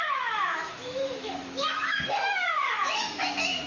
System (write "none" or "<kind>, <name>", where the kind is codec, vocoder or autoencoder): autoencoder, DAC-VAE